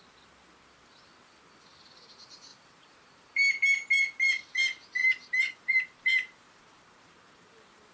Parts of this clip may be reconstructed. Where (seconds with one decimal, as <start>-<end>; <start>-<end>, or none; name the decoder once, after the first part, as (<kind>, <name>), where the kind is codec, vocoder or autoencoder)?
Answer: 2.5-3.6 (vocoder, BigVGAN v2); 5.0-7.9